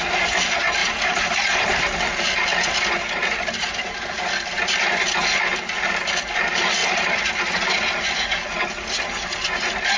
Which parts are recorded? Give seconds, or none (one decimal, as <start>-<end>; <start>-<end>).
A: 0.0-0.8; 5.6-10.0